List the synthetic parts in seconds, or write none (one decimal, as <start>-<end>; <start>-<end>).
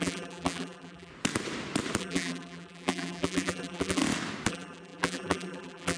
0.0-1.1; 2.0-4.0; 4.5-6.0